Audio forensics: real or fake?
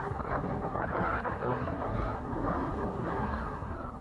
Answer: fake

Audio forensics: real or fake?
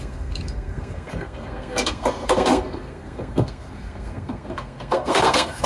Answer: fake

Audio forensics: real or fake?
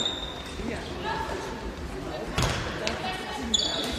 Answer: real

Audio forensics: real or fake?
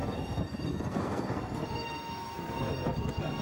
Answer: fake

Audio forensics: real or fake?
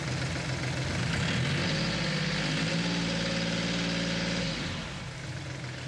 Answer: real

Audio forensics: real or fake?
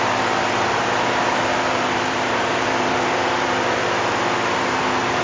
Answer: fake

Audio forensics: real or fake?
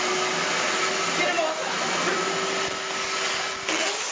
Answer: real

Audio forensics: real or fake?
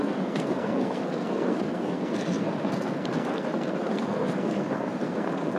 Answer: fake